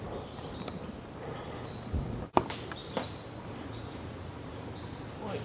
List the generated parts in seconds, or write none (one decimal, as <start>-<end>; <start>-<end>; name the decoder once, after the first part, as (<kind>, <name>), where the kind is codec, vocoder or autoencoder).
none